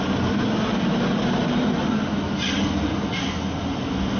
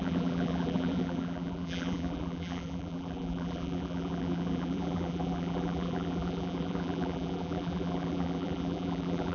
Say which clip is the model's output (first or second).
second